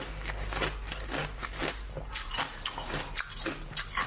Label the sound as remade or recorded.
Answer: recorded